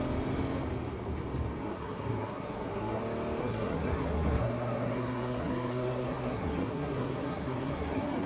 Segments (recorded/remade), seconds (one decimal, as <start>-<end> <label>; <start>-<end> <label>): 0.0-1.6 recorded; 1.6-3.0 remade; 3.0-3.4 recorded; 3.4-8.3 remade